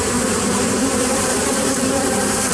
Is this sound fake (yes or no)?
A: yes